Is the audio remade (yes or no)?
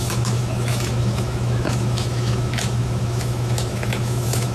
yes